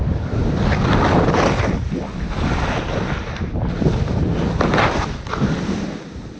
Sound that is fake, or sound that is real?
real